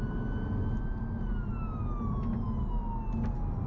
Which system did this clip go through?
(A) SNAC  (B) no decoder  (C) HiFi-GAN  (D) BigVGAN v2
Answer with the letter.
B